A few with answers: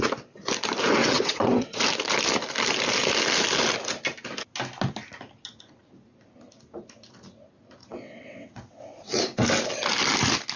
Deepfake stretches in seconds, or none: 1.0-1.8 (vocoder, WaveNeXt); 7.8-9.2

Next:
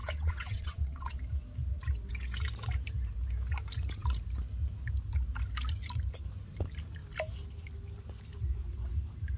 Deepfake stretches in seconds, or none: 0.0-1.2 (vocoder, WaveNeXt)

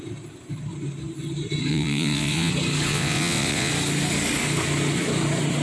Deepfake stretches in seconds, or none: 1.7-2.5 (vocoder, WaveNeXt); 2.9-3.7

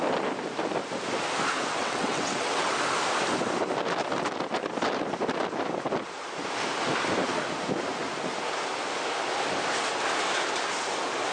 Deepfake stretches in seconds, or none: 1.8-2.7 (vocoder, WaveNeXt)

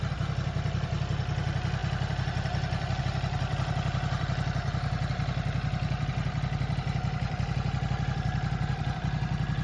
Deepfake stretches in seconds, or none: none